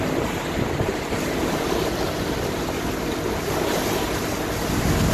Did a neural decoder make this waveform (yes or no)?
no